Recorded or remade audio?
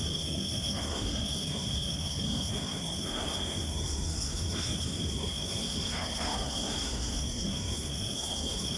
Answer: remade